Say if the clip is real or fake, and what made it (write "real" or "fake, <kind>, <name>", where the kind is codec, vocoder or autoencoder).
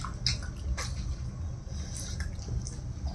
real